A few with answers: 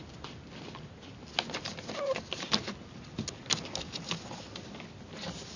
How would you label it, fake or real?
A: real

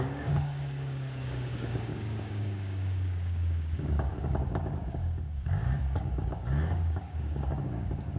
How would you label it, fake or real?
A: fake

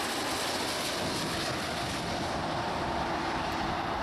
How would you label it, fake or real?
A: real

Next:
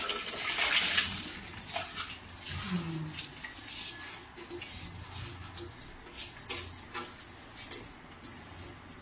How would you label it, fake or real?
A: real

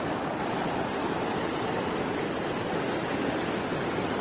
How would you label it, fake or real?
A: real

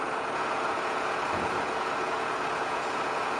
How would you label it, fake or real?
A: fake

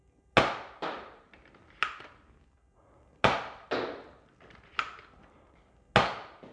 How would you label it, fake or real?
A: real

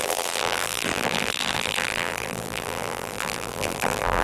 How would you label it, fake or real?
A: fake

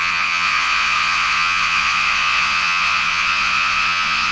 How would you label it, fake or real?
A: fake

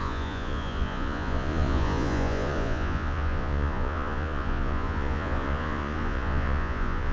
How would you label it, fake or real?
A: fake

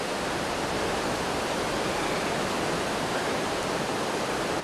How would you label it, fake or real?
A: fake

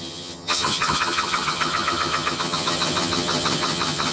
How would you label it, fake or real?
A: fake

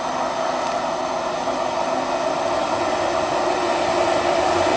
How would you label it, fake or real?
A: real